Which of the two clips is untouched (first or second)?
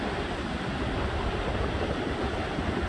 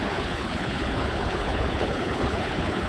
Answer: first